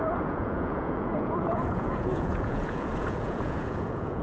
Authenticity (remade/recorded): remade